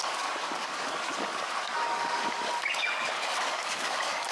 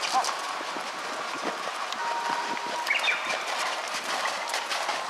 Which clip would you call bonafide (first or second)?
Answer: second